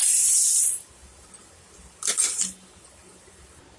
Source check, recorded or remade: remade